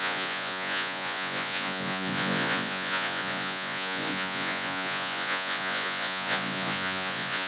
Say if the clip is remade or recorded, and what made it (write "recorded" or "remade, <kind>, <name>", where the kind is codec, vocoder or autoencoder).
remade, vocoder, Vocos